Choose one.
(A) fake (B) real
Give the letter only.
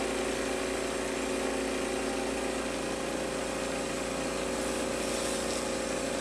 B